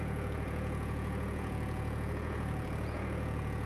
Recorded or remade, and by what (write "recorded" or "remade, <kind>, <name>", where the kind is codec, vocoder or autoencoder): remade, vocoder, Vocos